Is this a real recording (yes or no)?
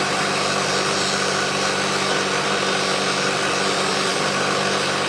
no